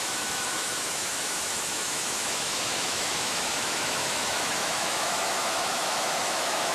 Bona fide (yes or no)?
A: no